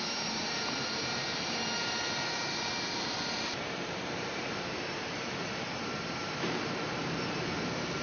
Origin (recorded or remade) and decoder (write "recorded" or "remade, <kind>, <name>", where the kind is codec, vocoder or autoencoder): remade, vocoder, BigVGAN v2